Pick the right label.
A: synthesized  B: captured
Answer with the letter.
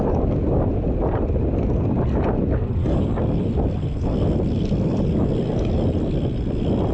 B